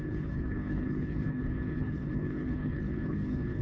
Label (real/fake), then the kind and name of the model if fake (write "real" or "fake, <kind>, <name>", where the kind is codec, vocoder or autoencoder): fake, codec, HILCodec